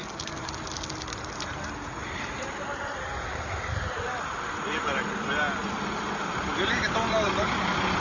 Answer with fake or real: real